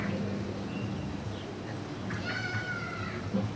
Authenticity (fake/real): real